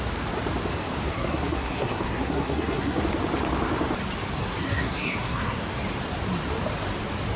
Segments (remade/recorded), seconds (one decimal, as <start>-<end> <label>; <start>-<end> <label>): 0.0-1.1 recorded; 1.1-3.0 remade; 3.0-4.4 recorded; 4.4-5.6 remade; 5.6-7.4 recorded